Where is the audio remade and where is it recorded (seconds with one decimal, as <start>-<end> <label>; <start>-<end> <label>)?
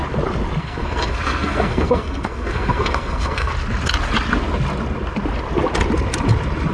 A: 0.0-0.6 recorded; 0.6-3.5 remade; 3.5-6.7 recorded